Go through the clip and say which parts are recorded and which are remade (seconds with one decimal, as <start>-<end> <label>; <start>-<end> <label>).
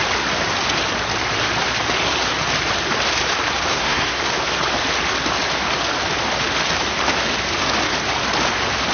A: 0.0-3.7 recorded; 3.7-4.2 remade; 4.2-8.9 recorded